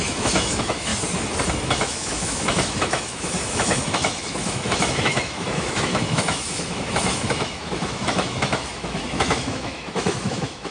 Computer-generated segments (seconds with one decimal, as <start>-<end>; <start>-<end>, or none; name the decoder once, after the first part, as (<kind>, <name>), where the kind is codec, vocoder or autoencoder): 0.0-0.9 (autoencoder, DAC-VAE); 1.5-10.7